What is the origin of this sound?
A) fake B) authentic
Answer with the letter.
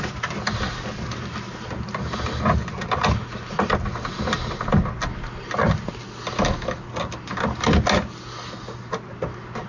B